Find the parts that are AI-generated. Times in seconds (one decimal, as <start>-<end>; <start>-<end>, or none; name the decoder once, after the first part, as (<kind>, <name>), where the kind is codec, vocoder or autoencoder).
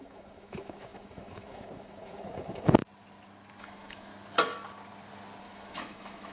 0.0-2.8 (autoencoder, DAC-VAE); 3.6-4.1; 5.4-6.3